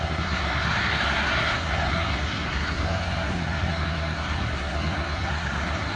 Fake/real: fake